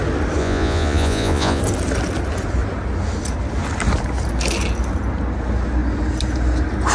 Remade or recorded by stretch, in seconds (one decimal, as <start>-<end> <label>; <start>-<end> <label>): 0.0-0.4 recorded; 0.4-1.6 remade; 1.6-6.9 recorded